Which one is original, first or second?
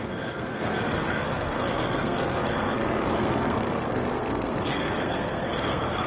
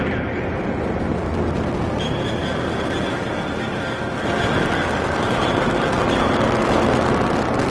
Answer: second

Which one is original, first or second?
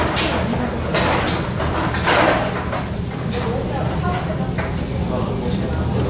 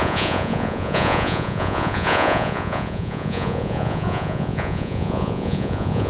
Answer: first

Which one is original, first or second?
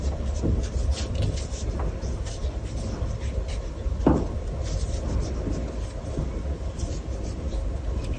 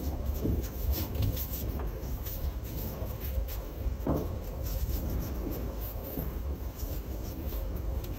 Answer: first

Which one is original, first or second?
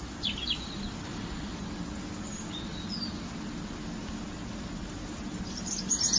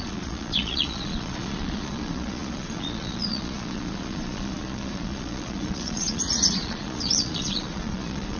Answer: first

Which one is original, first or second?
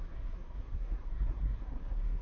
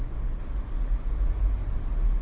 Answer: second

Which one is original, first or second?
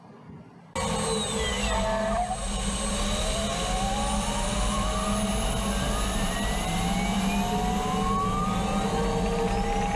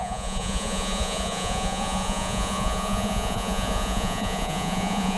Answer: first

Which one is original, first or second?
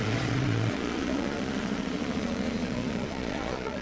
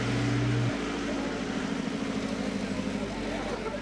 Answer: second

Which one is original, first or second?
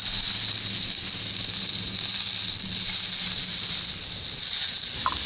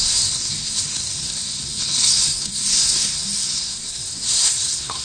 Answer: first